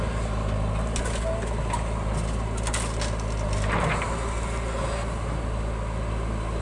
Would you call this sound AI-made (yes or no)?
no